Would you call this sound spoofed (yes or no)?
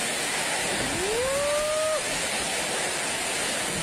no